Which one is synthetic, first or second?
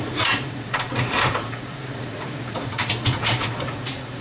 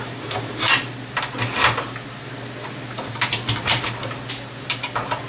first